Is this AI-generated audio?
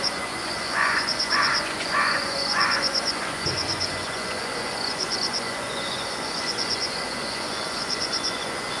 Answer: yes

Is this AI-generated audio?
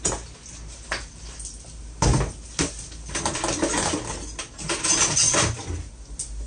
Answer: no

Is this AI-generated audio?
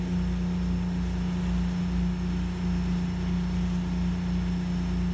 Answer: no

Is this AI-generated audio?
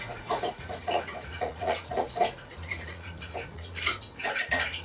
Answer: yes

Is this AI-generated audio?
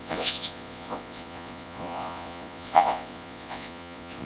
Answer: yes